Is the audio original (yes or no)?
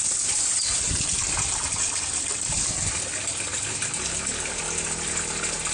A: yes